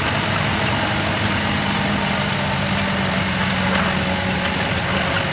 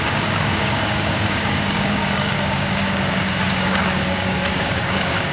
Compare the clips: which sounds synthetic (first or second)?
second